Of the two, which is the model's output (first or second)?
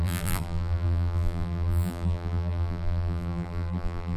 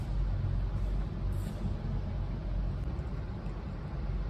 first